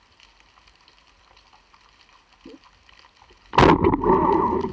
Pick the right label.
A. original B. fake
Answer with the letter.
A